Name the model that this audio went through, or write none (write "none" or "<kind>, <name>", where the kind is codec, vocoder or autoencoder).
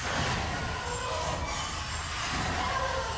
none